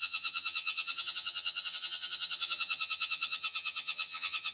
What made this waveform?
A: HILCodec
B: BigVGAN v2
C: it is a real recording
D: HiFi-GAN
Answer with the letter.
D